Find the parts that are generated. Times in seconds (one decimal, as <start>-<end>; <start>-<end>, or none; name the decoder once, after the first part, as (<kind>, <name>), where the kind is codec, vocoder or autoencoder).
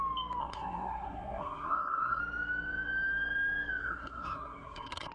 0.4-2.2 (codec, SNAC); 3.8-5.1